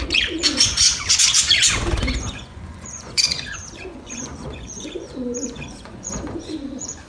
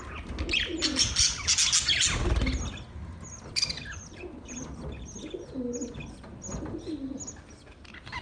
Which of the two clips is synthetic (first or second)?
first